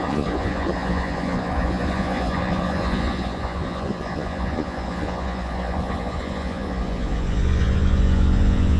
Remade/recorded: remade